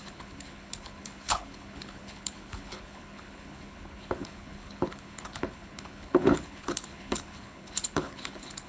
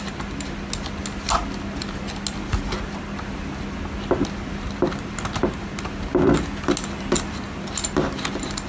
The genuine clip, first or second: second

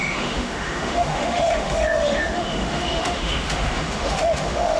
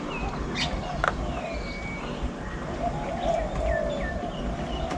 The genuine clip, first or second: second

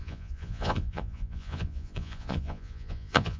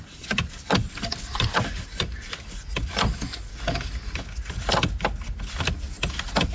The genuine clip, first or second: second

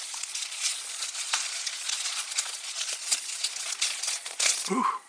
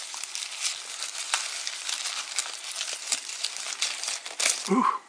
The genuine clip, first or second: second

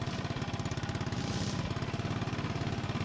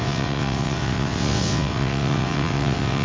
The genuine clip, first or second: first